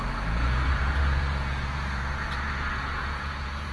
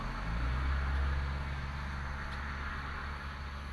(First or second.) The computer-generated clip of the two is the first